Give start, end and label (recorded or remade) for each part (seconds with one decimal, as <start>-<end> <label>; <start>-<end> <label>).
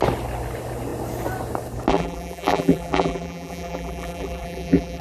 0.0-1.9 recorded; 1.9-5.0 remade